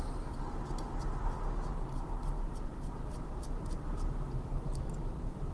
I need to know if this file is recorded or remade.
recorded